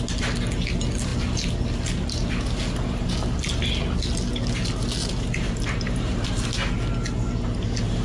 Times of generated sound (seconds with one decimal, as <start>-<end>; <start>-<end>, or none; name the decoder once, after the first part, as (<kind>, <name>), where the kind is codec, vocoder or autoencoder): 5.0-6.5 (vocoder, BigVGAN v2)

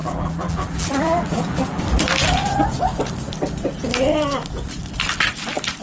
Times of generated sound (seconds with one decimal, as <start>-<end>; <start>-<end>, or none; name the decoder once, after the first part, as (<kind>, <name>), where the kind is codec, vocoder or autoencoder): 0.0-1.8 (vocoder, BigVGAN v2)

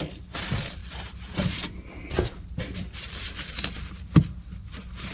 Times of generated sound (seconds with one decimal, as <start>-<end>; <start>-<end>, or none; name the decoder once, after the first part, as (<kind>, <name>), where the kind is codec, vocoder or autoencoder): 0.8-3.9 (vocoder, BigVGAN v2)

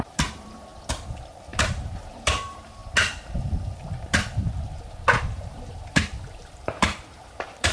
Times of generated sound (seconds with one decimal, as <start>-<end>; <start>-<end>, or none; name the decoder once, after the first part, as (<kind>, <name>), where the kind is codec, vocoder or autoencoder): 0.0-0.7 (vocoder, BigVGAN v2); 1.5-2.8; 5.2-7.7

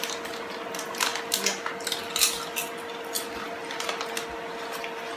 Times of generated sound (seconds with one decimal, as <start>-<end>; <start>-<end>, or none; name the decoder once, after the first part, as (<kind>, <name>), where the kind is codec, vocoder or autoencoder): none